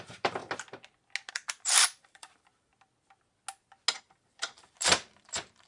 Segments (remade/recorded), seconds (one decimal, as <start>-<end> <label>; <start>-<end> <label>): 0.0-0.4 remade; 0.4-1.3 recorded; 1.3-2.7 remade; 2.7-4.0 recorded; 4.0-5.7 remade